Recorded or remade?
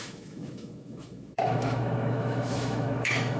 remade